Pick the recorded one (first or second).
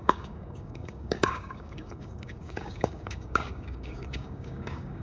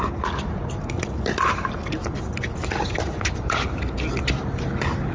second